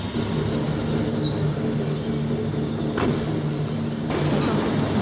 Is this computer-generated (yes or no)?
no